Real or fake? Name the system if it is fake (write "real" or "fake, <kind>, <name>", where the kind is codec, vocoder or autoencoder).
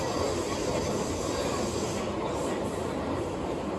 real